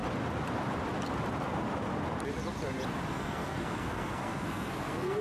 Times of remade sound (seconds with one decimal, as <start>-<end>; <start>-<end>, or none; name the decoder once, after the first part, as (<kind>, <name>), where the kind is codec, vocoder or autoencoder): 3.1-5.2 (codec, SNAC)